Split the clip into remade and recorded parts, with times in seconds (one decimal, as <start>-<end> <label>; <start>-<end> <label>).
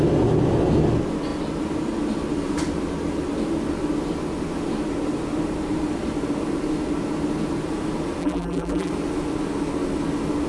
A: 0.0-8.2 recorded; 8.2-8.9 remade; 8.9-10.5 recorded